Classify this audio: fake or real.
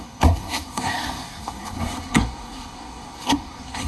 fake